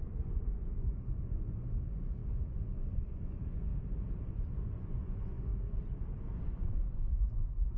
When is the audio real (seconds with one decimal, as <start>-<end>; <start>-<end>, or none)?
3.7-4.3; 5.5-6.4